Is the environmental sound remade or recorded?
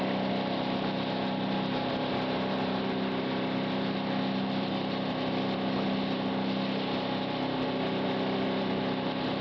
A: recorded